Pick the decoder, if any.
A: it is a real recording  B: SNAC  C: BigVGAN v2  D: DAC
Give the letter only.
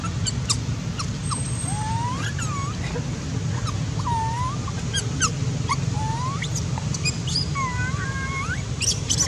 A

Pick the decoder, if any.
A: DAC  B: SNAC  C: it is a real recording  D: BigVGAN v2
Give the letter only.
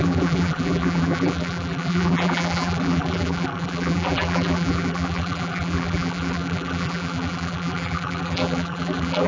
D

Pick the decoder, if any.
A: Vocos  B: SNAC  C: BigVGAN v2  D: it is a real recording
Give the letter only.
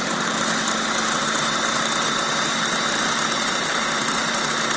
D